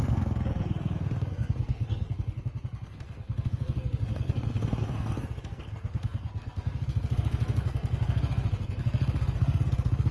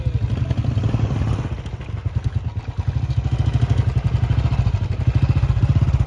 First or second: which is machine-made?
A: first